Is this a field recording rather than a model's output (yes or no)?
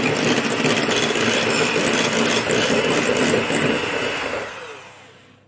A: yes